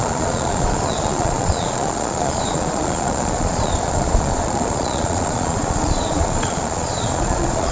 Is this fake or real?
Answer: fake